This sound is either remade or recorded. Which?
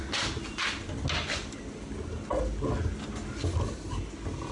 recorded